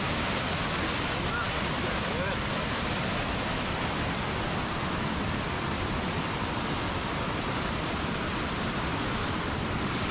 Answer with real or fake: fake